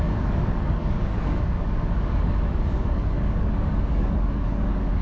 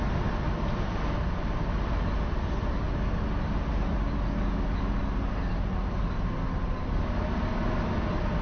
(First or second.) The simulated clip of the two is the first